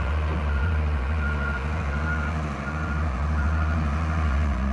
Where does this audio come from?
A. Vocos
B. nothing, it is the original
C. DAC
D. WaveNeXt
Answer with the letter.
A